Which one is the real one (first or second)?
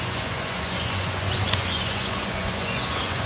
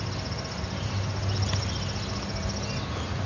second